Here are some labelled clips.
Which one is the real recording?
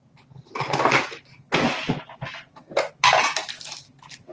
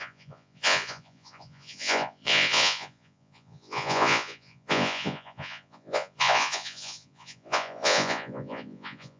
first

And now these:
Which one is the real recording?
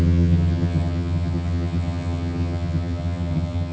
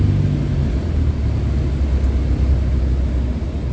second